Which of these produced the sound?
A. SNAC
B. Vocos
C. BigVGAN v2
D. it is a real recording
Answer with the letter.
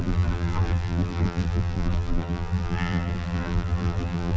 C